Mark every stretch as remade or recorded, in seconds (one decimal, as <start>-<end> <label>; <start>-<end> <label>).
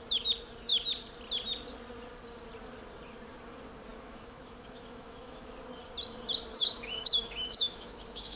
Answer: 0.0-3.9 recorded; 3.9-5.5 remade; 5.5-6.5 recorded; 6.5-8.4 remade